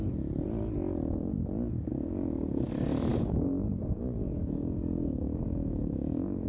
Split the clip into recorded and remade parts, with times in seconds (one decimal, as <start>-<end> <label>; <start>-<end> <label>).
0.0-1.9 recorded; 1.9-2.7 remade; 2.7-3.1 recorded; 3.1-6.5 remade